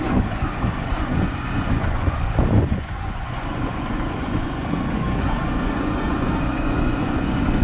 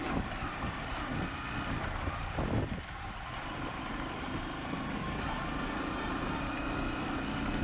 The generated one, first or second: first